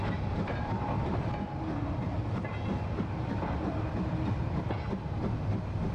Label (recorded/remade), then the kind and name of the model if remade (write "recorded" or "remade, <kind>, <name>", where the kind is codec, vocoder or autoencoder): recorded